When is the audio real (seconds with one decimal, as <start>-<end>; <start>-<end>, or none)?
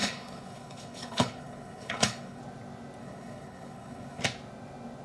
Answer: 2.4-3.0; 4.2-5.0